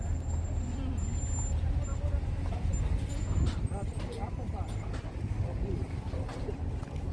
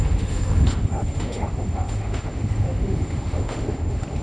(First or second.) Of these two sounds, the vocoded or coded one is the second